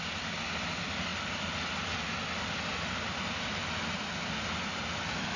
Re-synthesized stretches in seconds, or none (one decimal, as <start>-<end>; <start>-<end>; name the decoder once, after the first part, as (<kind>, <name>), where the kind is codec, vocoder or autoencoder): none

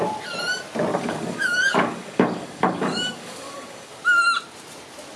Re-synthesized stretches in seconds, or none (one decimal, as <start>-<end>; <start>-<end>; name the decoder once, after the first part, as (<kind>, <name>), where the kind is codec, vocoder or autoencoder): 0.9-4.0 (codec, DAC)

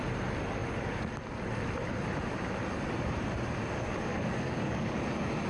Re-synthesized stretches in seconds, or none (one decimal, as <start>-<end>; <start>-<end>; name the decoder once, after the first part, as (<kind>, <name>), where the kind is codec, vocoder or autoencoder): 4.1-5.0 (codec, DAC)

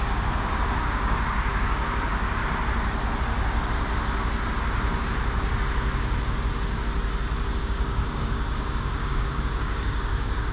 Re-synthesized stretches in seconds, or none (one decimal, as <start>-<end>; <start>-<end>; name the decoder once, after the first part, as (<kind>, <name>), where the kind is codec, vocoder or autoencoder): 0.0-2.4 (codec, DAC); 7.6-10.5

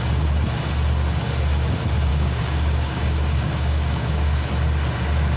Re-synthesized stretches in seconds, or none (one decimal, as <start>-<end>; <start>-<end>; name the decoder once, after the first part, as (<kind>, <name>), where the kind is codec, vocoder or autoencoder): 2.1-4.5 (codec, DAC)